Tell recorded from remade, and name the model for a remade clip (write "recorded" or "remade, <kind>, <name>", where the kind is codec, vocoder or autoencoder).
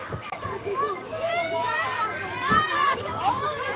remade, codec, DAC